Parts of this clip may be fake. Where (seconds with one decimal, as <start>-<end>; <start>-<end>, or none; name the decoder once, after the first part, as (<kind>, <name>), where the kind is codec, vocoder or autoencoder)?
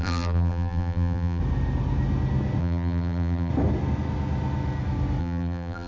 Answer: 0.0-1.4 (vocoder, BigVGAN v2); 2.6-3.5; 5.2-5.9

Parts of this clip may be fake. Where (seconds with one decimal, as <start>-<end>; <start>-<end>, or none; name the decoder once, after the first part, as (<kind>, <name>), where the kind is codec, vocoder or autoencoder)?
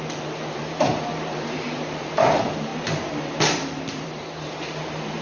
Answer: 0.0-5.2 (vocoder, BigVGAN v2)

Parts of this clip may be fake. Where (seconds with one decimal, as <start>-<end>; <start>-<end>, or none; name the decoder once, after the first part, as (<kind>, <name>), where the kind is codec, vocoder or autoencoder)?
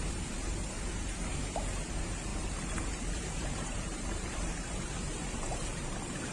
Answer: 0.0-6.3 (vocoder, BigVGAN v2)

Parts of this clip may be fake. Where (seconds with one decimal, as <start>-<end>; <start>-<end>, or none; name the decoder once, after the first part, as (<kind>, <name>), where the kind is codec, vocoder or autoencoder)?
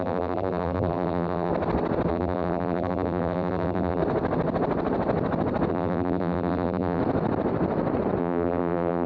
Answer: 0.0-1.5 (vocoder, BigVGAN v2); 2.1-4.0; 5.7-7.0; 8.2-9.1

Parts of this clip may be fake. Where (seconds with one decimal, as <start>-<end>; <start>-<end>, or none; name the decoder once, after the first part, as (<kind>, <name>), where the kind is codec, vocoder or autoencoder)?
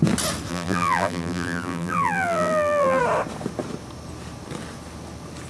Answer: 0.5-3.0 (vocoder, BigVGAN v2)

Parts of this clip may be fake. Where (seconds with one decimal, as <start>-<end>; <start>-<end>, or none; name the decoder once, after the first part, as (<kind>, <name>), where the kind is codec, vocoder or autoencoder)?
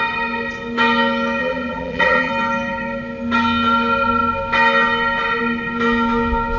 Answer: 1.4-2.3 (vocoder, BigVGAN v2)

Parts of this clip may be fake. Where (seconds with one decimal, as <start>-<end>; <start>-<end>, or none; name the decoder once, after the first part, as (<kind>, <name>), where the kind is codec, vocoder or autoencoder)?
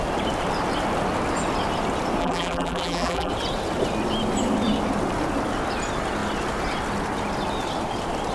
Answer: 2.2-3.3 (vocoder, BigVGAN v2)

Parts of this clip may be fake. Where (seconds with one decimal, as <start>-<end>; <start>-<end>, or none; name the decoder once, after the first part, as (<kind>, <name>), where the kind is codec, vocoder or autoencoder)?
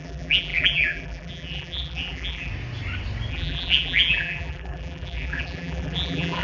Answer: 0.0-2.5 (vocoder, BigVGAN v2); 3.3-6.4